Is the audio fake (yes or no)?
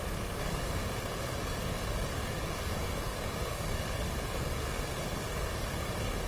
yes